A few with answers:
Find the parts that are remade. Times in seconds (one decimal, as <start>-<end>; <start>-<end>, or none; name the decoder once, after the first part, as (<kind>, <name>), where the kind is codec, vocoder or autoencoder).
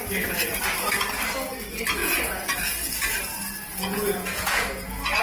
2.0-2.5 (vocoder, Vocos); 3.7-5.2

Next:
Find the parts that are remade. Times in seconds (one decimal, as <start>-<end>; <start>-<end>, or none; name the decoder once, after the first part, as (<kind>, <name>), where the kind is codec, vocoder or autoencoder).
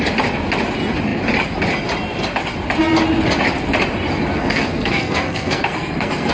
4.3-6.3 (codec, SNAC)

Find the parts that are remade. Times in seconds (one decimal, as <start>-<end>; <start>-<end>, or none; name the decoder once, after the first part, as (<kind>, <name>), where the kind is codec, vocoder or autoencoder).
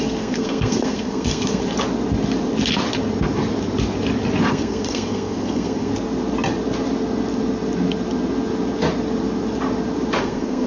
0.0-1.6 (codec, SNAC); 4.5-5.9; 10.2-10.7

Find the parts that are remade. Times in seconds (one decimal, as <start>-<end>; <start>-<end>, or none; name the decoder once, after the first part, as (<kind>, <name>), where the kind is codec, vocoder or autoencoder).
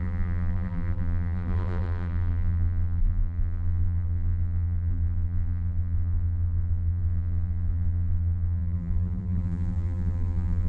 0.0-10.7 (vocoder, BigVGAN v2)